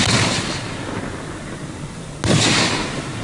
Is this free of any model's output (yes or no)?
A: yes